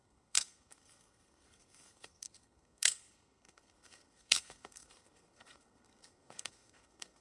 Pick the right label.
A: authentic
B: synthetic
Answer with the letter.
B